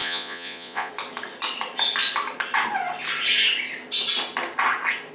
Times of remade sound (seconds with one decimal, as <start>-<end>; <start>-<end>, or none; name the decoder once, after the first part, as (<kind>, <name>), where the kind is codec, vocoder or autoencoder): 0.0-0.9 (vocoder, Vocos)